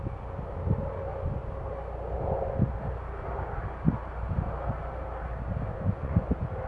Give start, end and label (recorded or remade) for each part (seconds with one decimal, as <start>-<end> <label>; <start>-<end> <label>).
0.0-5.7 recorded; 5.7-6.2 remade; 6.2-6.7 recorded